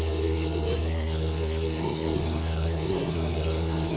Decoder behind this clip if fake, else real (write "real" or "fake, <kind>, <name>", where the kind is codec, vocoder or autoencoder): fake, codec, SNAC